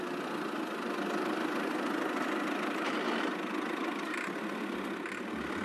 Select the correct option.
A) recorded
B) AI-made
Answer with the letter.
A